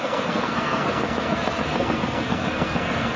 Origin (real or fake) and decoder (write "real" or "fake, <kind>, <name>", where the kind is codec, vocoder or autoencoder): fake, codec, SNAC